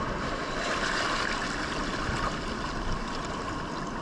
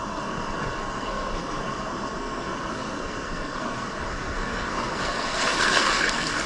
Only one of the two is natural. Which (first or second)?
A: first